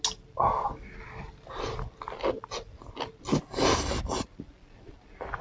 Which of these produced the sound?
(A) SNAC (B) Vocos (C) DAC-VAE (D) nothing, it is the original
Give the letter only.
D